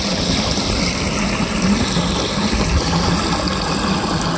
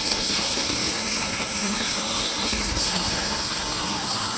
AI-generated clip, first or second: second